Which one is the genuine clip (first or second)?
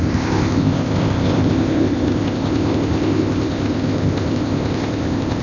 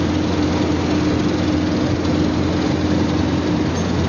second